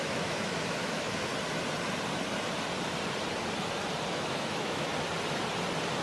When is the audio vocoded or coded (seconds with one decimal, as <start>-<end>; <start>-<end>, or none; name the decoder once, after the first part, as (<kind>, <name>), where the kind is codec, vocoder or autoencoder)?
0.0-1.3 (autoencoder, DAC-VAE); 4.1-4.9